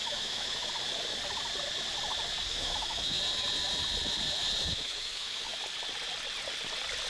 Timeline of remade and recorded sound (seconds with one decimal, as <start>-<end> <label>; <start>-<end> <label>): 0.0-0.7 remade; 0.7-2.5 recorded; 2.5-3.2 remade; 3.2-4.6 recorded; 4.6-5.6 remade; 5.6-7.1 recorded